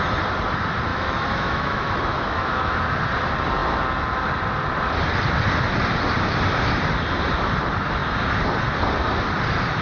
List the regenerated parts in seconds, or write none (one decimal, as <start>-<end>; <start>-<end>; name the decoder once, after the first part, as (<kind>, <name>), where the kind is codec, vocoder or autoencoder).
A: 0.9-2.8 (autoencoder, DAC-VAE)